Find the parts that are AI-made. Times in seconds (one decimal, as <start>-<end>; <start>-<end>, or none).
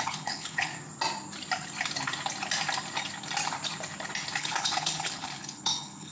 0.0-0.7; 4.4-6.1